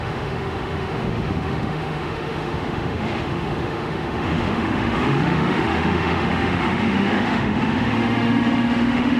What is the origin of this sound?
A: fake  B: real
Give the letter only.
A